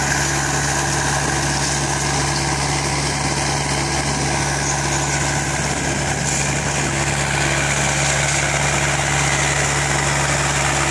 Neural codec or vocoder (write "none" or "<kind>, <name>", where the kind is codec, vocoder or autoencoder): none